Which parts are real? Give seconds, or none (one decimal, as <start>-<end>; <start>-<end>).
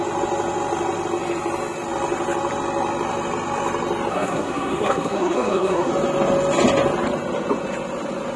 0.0-4.1; 5.9-8.4